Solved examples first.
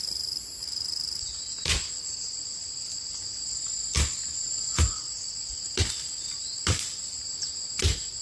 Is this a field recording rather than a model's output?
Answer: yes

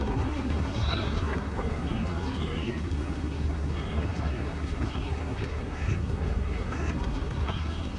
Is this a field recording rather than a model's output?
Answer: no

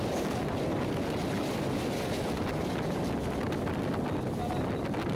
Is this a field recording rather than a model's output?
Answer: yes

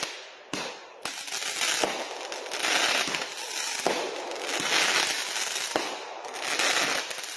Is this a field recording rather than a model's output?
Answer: yes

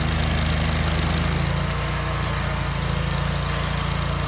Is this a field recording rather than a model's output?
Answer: yes